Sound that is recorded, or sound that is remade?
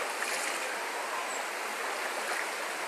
recorded